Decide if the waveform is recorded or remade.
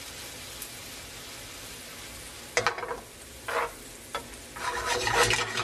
recorded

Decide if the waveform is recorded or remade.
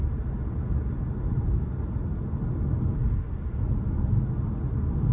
recorded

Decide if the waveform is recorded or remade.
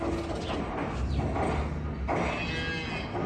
recorded